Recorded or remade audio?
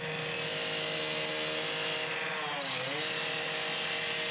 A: recorded